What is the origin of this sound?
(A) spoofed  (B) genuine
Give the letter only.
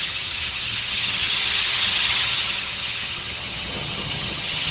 A